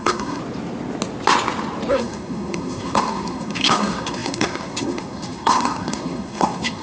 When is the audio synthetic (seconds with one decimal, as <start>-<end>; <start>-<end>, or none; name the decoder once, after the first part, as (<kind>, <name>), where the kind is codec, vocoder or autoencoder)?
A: 0.0-0.4 (codec, SNAC); 1.9-6.8